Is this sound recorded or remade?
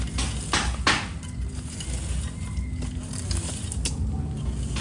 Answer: recorded